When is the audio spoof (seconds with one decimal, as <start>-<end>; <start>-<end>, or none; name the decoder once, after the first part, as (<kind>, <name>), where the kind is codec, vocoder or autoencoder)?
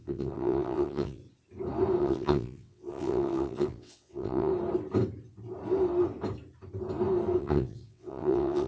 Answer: 0.0-1.2 (vocoder, WaveNeXt); 2.0-4.5; 7.4-8.7